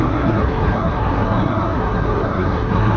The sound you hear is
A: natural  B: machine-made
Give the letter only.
B